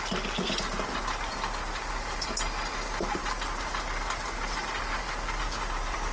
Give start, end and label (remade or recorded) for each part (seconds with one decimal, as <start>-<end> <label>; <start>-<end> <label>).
0.0-6.1 recorded